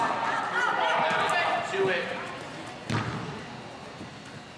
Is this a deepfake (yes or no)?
no